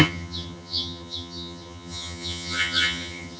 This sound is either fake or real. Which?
fake